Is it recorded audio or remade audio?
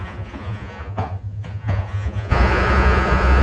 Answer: remade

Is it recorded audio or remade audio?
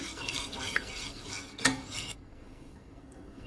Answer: remade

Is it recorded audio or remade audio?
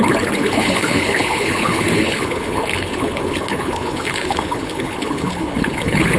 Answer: remade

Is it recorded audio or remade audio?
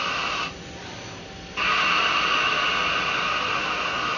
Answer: recorded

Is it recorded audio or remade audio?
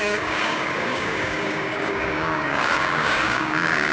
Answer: remade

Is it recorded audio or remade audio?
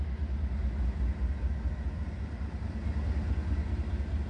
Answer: recorded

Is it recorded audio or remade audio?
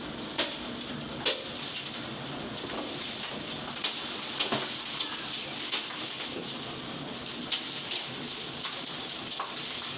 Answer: recorded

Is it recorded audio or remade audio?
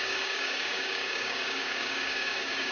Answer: remade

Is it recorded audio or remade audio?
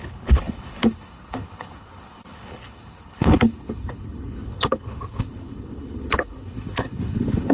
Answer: remade